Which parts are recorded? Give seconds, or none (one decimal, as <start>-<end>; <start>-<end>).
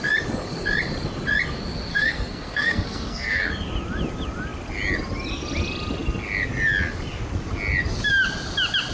0.0-1.9; 3.5-8.9